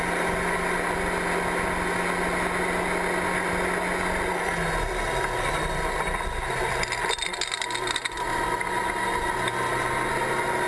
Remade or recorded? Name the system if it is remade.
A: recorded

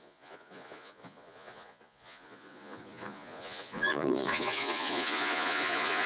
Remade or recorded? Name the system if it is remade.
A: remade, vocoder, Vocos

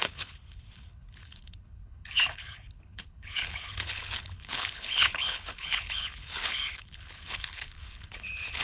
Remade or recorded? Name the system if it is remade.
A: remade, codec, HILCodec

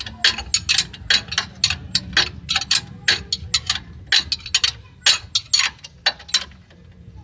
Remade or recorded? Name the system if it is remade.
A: recorded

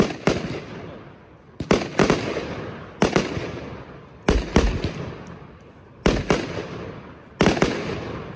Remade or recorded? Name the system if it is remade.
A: recorded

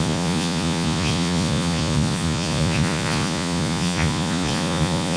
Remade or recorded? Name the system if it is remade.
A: remade, vocoder, Vocos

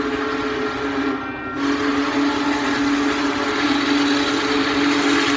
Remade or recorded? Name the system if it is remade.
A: recorded